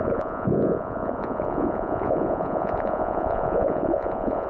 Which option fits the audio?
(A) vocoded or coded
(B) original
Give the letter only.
A